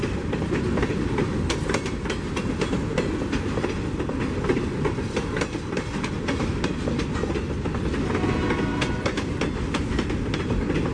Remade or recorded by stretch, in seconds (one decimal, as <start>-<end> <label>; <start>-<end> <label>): 0.0-10.9 recorded